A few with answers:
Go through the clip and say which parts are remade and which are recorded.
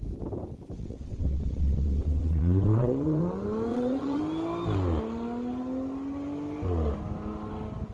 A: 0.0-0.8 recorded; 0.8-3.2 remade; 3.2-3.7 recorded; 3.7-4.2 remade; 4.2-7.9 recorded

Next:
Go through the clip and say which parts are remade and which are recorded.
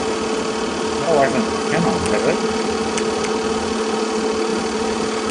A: 0.0-5.3 recorded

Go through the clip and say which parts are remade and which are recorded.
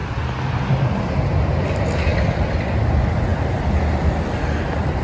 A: 0.0-5.0 recorded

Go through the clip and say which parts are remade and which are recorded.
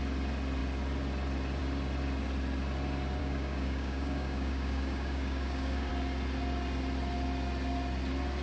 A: 0.0-3.2 recorded; 3.2-5.9 remade; 5.9-8.4 recorded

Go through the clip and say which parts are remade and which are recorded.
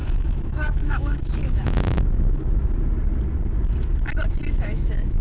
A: 0.0-2.6 remade; 2.6-4.5 recorded; 4.5-5.2 remade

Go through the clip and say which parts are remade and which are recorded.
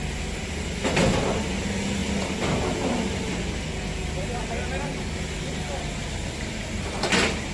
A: 0.0-4.9 recorded; 4.9-5.5 remade; 5.5-6.0 recorded; 6.0-7.1 remade; 7.1-7.5 recorded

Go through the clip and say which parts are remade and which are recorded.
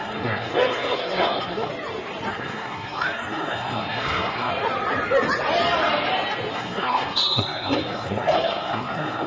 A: 0.0-1.7 remade; 1.7-2.3 recorded; 2.3-4.5 remade; 4.5-6.5 recorded; 6.5-9.3 remade